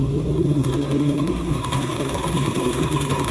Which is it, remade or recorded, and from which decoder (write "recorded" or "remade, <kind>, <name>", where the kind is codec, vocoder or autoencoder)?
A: remade, codec, SNAC